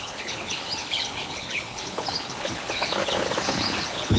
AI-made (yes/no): yes